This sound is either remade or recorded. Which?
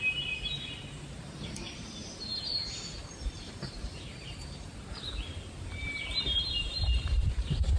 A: remade